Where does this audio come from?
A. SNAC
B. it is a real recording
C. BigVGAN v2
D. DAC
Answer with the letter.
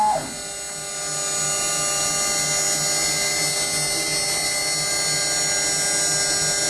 B